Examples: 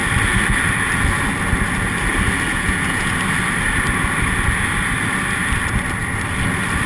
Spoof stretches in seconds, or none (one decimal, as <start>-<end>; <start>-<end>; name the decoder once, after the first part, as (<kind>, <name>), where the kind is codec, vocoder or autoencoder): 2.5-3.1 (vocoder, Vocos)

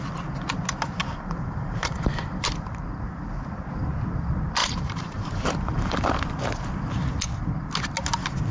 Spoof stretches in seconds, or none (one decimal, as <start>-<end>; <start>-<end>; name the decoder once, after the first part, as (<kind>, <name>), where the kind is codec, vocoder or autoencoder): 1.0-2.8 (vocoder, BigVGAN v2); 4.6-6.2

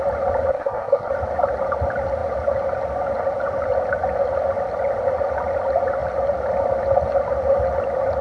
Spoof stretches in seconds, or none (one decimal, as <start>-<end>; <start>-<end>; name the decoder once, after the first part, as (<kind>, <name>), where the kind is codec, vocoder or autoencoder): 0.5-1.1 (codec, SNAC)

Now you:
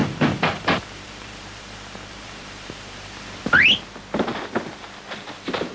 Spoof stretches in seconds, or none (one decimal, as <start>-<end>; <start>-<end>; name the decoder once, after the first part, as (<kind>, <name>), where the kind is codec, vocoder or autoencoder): 0.0-3.4 (vocoder, BigVGAN v2)

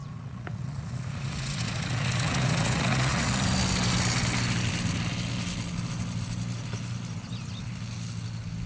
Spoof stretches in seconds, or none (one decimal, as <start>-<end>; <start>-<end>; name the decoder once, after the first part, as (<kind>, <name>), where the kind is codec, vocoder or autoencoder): 0.0-3.3 (vocoder, Vocos)

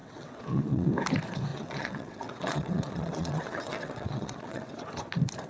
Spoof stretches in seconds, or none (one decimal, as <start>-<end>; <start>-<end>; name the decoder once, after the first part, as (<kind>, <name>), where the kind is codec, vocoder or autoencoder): 0.0-0.9 (vocoder, WaveNeXt); 1.5-4.8